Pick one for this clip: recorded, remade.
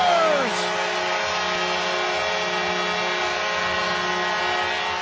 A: recorded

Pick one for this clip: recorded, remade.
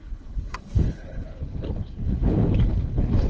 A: remade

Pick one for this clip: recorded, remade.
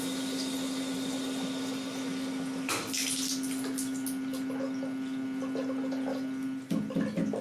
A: recorded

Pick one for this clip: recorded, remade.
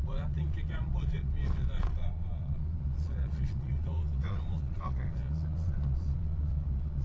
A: remade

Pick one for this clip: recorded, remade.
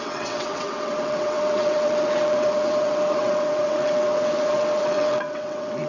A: remade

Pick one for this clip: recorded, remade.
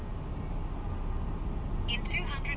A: recorded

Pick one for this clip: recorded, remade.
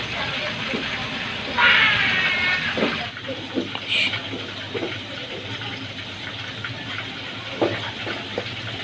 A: recorded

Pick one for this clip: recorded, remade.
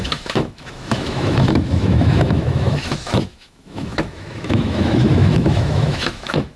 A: remade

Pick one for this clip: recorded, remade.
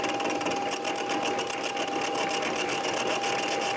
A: recorded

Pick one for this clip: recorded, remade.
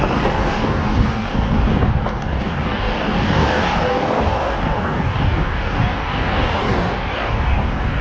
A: remade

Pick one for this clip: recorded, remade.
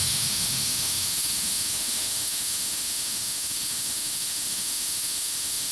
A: remade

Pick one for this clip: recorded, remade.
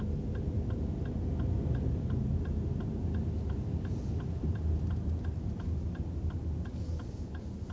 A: recorded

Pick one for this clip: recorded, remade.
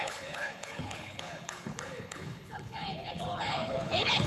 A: remade